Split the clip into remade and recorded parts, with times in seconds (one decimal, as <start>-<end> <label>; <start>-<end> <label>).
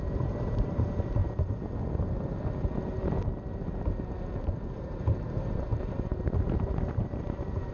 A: 0.0-1.2 remade; 1.2-4.7 recorded; 4.7-7.7 remade